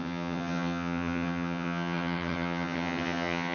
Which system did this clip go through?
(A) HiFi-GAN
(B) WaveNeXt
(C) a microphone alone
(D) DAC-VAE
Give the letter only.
A